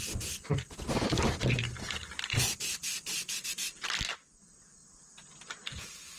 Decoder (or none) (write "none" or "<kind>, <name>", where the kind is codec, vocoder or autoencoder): none